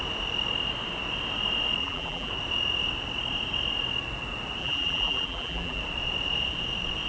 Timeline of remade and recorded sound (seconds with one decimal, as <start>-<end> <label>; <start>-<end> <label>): 0.0-1.8 recorded; 1.8-2.3 remade; 2.3-4.6 recorded; 4.6-5.8 remade; 5.8-7.1 recorded